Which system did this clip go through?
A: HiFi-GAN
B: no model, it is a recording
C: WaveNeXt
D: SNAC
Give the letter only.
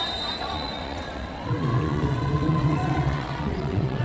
C